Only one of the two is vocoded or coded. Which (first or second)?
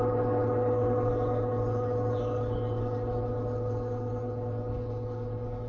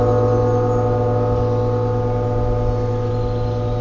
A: first